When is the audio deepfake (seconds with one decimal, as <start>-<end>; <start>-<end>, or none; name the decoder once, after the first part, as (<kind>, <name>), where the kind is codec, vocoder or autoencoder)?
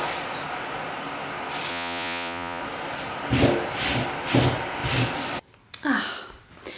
1.7-2.6 (vocoder, Vocos)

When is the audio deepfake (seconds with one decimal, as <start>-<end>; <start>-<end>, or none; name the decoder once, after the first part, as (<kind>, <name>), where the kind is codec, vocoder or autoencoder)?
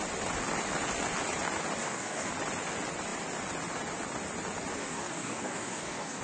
1.8-2.3 (codec, DAC); 4.8-6.2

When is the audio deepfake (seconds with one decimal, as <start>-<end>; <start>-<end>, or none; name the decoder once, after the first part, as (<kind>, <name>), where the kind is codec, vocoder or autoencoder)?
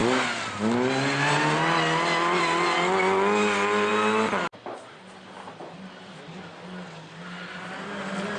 none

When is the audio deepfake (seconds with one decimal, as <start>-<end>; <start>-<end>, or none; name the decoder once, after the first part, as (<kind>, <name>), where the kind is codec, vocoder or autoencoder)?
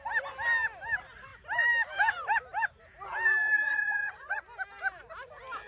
3.4-4.4 (vocoder, Vocos)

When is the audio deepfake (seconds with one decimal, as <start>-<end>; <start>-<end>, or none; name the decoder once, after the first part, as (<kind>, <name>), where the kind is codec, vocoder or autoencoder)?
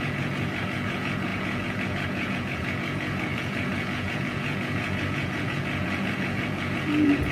0.0-7.3 (vocoder, Vocos)